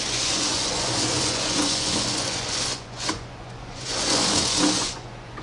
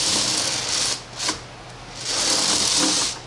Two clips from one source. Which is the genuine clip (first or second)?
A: second